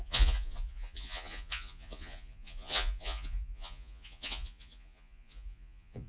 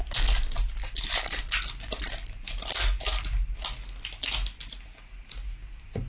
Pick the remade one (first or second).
first